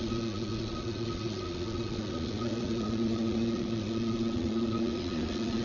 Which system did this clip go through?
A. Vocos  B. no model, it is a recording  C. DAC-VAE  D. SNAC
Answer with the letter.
A